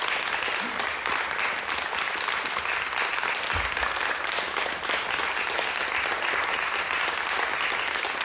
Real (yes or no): yes